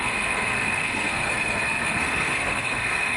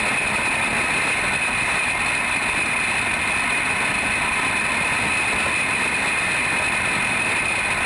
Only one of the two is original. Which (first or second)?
second